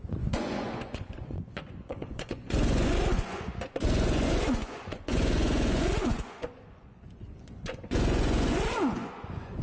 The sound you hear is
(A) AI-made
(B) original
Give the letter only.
A